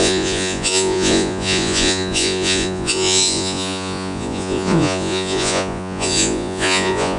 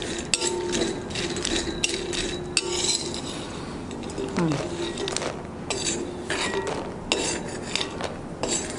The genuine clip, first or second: second